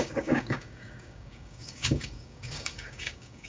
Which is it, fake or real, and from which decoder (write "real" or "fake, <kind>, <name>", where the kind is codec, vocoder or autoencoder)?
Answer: fake, codec, DAC